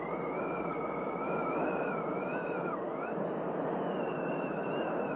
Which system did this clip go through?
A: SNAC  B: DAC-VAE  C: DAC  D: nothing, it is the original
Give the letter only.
D